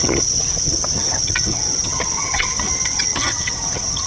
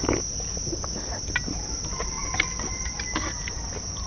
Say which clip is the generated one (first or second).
first